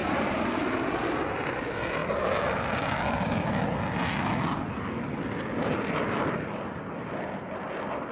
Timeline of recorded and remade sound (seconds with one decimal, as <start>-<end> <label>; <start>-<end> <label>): 0.0-0.6 remade; 0.6-8.1 recorded